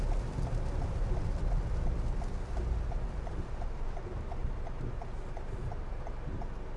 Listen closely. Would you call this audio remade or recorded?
recorded